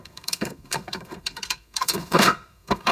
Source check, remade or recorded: remade